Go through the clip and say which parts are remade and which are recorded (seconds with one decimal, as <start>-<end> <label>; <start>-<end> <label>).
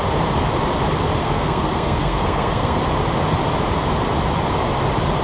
0.0-1.2 recorded; 1.2-2.8 remade; 2.8-5.2 recorded